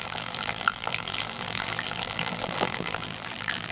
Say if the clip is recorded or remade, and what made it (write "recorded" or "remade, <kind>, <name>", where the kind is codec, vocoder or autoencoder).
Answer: remade, vocoder, BigVGAN v2